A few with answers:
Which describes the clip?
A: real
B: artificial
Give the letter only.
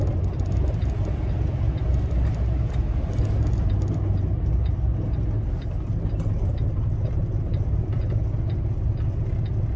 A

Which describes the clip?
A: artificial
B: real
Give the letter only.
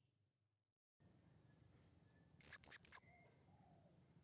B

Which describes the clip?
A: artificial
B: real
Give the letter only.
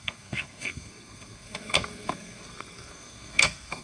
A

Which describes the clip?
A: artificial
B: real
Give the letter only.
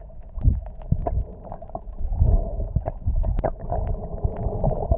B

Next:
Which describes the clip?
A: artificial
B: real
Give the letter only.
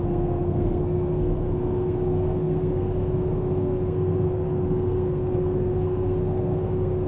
A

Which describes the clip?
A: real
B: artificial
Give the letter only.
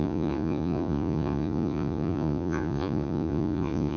B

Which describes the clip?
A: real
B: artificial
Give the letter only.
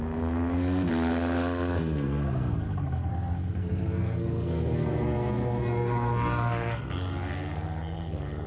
B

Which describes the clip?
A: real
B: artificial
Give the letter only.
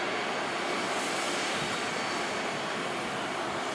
A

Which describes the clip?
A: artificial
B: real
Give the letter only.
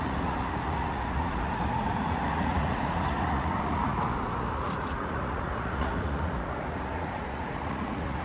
A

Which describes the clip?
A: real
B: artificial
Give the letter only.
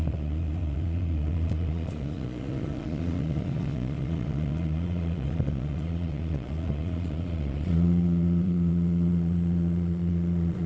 B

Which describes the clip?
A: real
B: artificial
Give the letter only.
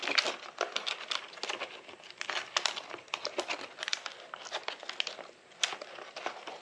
A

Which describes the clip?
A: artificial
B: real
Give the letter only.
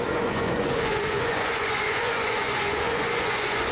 A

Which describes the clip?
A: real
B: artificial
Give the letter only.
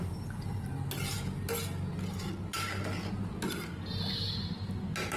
A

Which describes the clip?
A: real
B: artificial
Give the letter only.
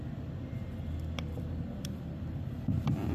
A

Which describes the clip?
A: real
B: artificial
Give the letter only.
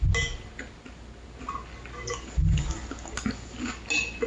A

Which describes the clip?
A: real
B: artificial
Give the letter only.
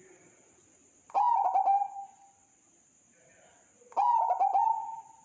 A